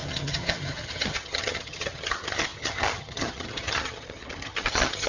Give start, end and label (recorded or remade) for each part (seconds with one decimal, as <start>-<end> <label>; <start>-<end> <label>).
0.0-5.1 remade